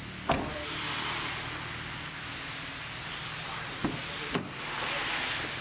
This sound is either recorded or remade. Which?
recorded